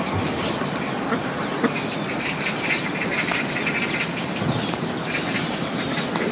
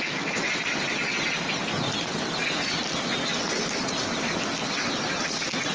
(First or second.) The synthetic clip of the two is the first